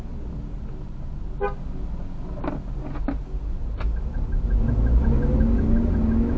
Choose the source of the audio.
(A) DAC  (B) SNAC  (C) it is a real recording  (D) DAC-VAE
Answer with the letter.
C